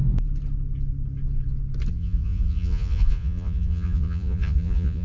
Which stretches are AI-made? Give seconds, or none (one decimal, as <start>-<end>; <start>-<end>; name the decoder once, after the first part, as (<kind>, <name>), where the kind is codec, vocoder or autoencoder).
1.9-5.0 (vocoder, Vocos)